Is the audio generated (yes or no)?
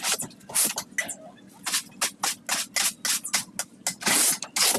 no